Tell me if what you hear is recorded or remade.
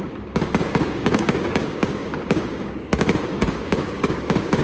remade